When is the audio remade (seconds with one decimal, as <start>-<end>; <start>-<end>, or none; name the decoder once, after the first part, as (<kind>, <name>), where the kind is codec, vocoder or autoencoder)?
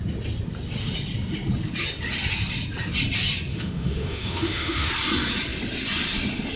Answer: 3.5-4.9 (autoencoder, DAC-VAE)